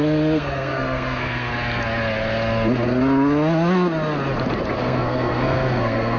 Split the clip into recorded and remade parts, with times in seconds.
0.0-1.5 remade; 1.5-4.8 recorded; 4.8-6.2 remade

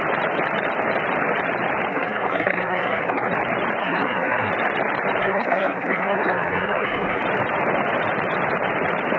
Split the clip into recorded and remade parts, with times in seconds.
0.0-1.9 recorded; 1.9-3.3 remade; 3.3-3.8 recorded; 3.8-4.5 remade; 4.5-5.2 recorded; 5.2-7.2 remade; 7.2-9.2 recorded